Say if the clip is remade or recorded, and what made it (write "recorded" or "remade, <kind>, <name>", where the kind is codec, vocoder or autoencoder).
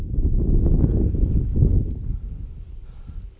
recorded